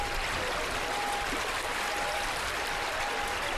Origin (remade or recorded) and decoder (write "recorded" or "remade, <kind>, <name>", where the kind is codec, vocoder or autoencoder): recorded